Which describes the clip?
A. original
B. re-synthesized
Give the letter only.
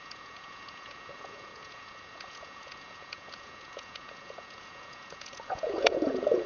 B